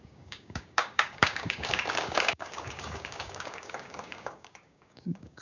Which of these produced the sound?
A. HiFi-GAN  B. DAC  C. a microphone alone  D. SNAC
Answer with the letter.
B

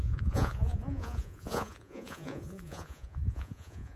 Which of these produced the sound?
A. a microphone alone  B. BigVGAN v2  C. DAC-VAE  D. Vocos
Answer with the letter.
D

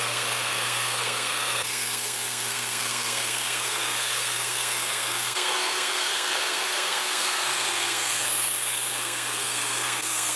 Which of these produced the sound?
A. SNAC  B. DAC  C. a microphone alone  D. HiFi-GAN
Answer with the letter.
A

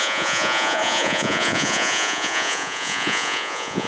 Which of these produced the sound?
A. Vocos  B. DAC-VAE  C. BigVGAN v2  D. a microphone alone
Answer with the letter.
A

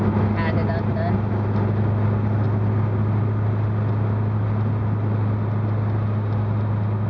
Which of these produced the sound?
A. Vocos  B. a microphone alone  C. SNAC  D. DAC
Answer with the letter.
B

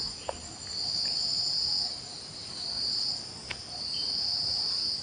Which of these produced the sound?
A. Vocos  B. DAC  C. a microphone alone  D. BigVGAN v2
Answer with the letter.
C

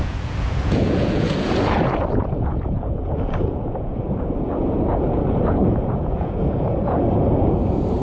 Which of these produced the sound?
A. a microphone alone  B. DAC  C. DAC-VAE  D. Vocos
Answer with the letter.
D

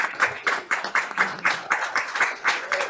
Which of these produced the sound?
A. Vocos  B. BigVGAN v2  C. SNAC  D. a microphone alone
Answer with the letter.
A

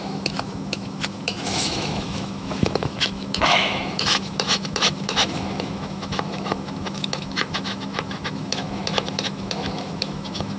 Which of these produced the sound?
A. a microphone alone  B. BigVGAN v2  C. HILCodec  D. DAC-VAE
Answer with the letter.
D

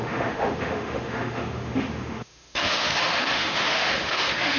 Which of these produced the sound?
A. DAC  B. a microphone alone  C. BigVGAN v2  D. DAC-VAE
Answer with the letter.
D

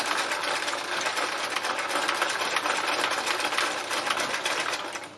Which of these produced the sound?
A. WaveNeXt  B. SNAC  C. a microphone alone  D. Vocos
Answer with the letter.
C